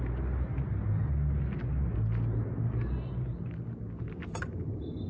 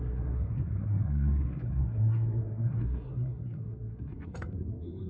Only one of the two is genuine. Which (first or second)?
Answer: first